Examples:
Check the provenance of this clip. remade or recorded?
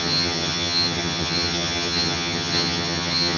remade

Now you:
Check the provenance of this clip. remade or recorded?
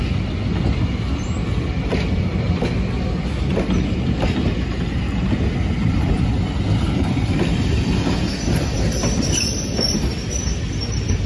recorded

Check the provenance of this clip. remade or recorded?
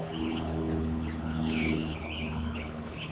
remade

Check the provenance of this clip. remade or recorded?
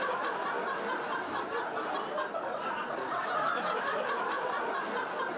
recorded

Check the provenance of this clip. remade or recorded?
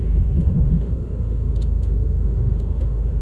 remade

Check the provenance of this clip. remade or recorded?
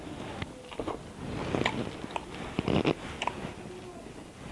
recorded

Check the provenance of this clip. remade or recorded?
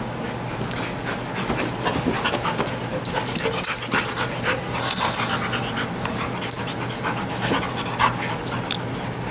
recorded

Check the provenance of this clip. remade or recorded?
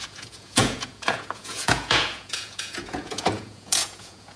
remade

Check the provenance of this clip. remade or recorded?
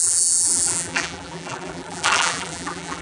remade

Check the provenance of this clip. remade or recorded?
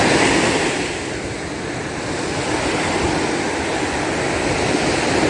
recorded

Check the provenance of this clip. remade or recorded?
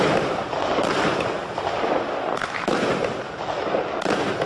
recorded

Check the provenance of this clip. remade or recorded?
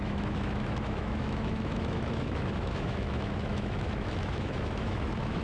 remade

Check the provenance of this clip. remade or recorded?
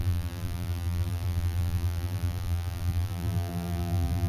remade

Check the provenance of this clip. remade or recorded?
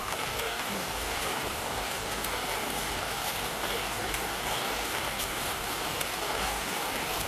remade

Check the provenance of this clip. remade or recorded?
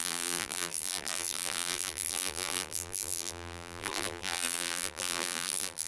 remade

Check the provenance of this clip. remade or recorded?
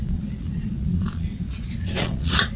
remade